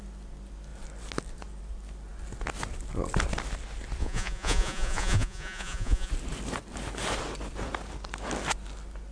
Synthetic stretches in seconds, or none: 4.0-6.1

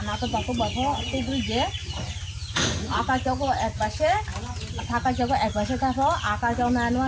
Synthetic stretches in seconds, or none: 1.8-3.0

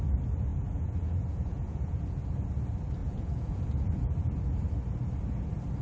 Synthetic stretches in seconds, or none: 0.5-2.2; 3.0-4.1